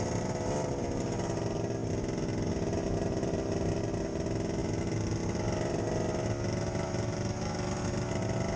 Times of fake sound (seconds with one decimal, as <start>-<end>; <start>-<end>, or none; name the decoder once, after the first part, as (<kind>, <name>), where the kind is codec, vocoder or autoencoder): none